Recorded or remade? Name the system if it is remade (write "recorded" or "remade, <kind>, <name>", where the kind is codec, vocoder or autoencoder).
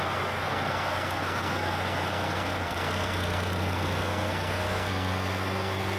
remade, codec, SNAC